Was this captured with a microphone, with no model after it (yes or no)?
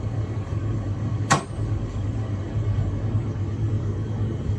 no